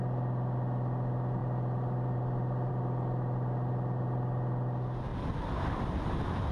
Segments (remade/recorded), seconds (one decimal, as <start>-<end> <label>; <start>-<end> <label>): 0.0-1.4 recorded; 1.4-2.7 remade; 2.7-5.1 recorded; 5.1-5.8 remade; 5.8-6.5 recorded